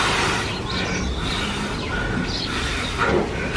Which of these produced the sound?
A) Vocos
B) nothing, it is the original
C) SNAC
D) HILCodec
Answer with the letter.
B